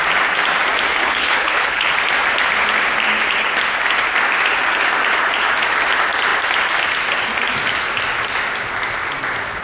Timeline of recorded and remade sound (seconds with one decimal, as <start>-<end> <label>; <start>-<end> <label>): 0.0-1.0 recorded; 1.0-1.9 remade; 1.9-9.6 recorded